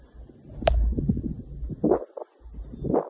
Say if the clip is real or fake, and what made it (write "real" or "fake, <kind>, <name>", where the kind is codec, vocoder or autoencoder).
real